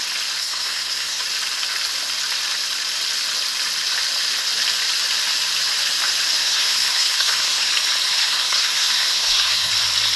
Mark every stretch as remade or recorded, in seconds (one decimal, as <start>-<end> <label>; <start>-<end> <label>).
0.0-0.4 recorded; 0.4-1.2 remade; 1.2-6.4 recorded; 6.4-7.7 remade; 7.7-8.2 recorded; 8.2-9.7 remade; 9.7-10.2 recorded